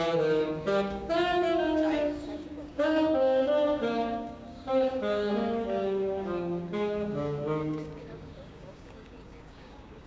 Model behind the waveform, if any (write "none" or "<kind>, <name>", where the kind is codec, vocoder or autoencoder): codec, DAC